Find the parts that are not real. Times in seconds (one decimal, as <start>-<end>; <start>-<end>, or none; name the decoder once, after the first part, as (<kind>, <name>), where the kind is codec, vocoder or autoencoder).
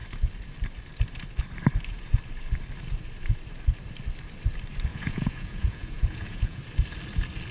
4.9-6.6 (vocoder, Vocos)